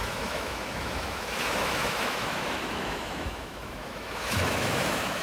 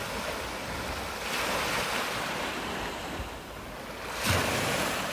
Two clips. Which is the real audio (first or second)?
second